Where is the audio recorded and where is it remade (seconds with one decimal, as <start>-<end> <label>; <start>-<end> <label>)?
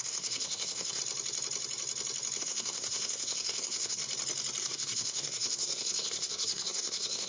0.0-1.0 remade; 1.0-2.4 recorded; 2.4-4.0 remade; 4.0-4.6 recorded; 4.6-7.3 remade